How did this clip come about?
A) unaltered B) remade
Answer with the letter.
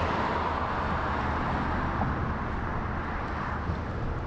A